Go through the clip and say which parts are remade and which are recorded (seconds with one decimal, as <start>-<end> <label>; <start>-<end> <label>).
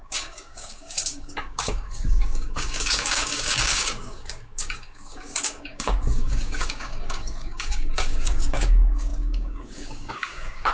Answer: 0.0-10.7 remade